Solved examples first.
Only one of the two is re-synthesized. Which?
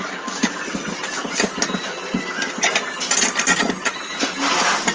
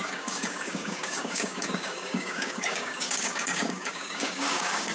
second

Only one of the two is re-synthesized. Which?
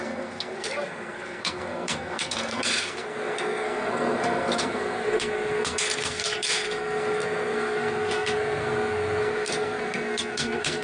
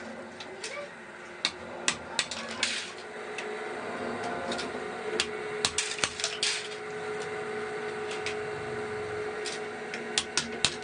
first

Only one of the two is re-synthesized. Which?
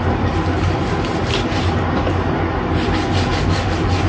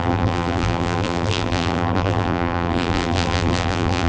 second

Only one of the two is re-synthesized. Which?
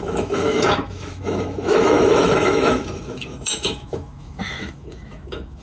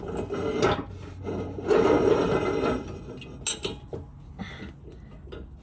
first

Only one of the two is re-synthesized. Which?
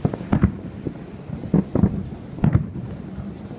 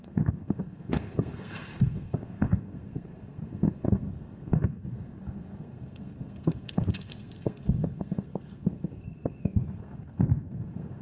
second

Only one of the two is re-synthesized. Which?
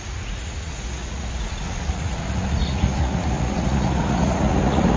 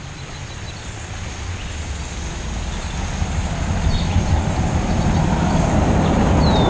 first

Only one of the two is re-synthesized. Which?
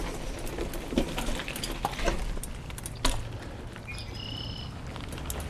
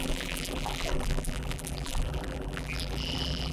second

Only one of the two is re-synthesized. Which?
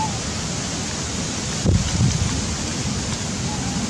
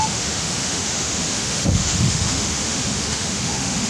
second